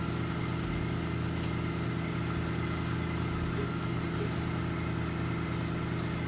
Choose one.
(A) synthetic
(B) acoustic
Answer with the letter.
B